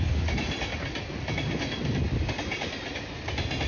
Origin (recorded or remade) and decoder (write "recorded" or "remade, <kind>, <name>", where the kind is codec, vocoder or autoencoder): recorded